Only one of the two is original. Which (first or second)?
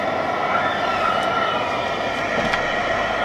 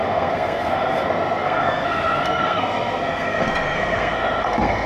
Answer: first